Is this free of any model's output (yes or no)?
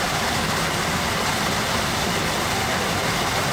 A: yes